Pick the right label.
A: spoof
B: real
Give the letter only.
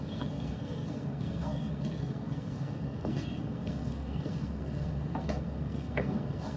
A